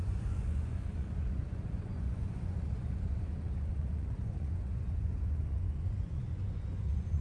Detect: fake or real fake